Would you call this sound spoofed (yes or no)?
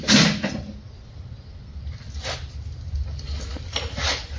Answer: no